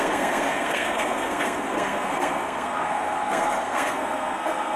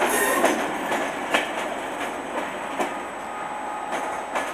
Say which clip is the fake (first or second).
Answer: first